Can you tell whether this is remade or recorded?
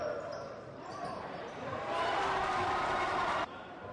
remade